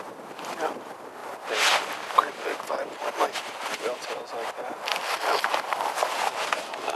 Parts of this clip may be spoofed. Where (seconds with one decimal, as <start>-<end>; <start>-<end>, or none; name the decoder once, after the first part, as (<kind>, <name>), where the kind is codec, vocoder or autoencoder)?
none